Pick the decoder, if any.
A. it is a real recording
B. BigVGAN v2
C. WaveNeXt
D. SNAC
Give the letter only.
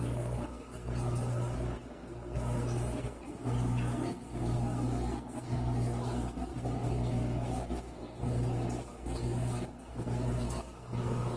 D